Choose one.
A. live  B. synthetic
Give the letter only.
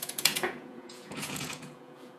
B